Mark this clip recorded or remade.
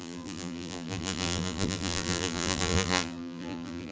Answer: remade